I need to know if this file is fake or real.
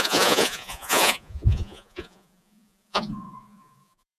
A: fake